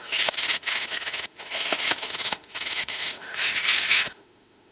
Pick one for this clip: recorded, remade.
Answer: remade